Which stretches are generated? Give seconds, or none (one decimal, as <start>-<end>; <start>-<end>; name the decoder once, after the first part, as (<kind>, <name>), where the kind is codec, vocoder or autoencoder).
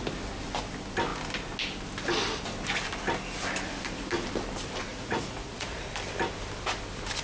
4.9-5.9 (vocoder, Vocos)